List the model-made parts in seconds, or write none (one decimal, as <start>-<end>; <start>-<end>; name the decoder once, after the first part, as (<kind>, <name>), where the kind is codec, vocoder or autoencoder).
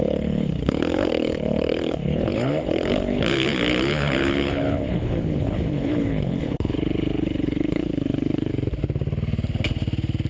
0.0-8.5 (codec, HILCodec)